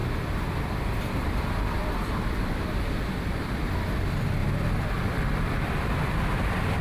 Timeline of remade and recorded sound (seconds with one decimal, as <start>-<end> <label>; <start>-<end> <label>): 0.0-0.9 recorded; 0.9-6.8 remade